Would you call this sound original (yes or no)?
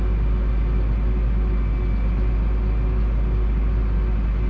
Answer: yes